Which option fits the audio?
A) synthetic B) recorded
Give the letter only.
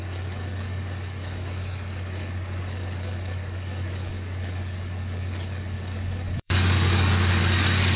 A